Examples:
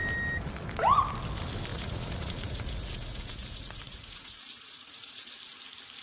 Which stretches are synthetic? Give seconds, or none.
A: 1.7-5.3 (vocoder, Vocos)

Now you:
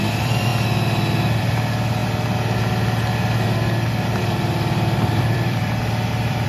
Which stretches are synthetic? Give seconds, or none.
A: 0.0-0.5 (vocoder, BigVGAN v2); 1.4-2.0; 4.2-6.5